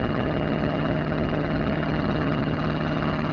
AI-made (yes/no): yes